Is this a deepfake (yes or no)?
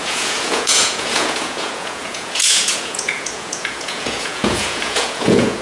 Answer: yes